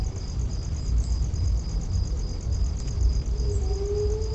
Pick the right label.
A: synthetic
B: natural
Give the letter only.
B